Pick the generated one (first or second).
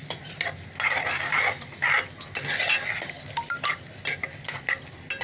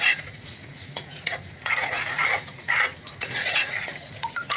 second